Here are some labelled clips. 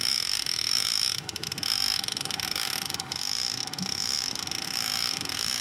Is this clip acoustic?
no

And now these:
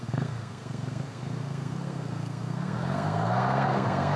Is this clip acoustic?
no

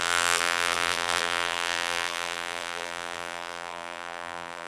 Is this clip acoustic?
no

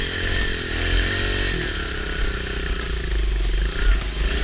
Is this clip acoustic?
yes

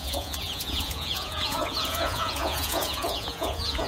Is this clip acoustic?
no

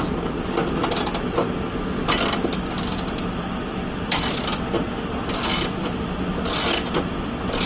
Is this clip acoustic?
yes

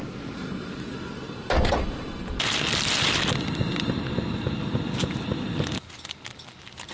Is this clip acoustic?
yes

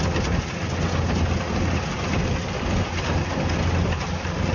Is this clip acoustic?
yes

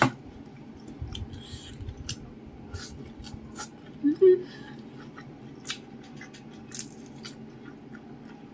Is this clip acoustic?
yes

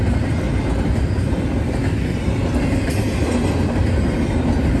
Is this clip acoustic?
yes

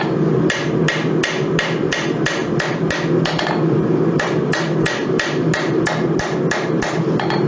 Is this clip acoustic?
yes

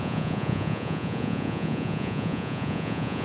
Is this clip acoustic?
no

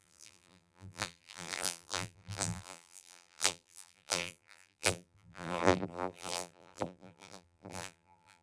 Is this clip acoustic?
no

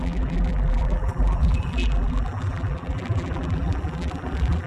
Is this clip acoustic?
no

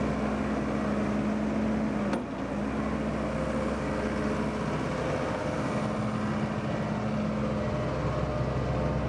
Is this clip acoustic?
yes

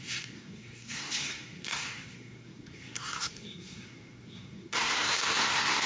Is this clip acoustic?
no